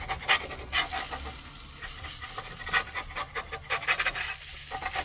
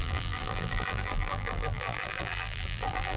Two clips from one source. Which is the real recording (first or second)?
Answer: first